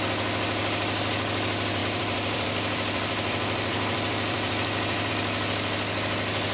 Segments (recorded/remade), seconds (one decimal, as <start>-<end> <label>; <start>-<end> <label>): 0.0-1.8 recorded; 1.8-5.1 remade; 5.1-6.5 recorded